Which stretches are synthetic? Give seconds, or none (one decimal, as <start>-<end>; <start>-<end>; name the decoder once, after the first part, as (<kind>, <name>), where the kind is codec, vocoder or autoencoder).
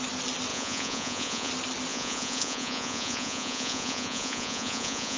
0.5-1.5 (vocoder, Vocos); 1.9-5.2